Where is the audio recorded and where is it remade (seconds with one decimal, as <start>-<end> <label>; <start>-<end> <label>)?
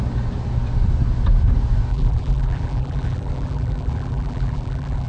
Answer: 0.0-1.9 recorded; 1.9-5.1 remade